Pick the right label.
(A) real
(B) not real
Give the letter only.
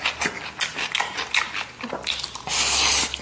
A